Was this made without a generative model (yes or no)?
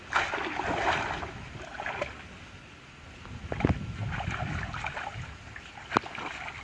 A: yes